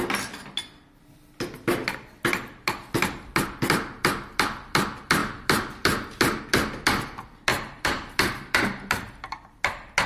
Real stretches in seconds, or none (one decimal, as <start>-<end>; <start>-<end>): 0.0-7.5; 8.1-10.1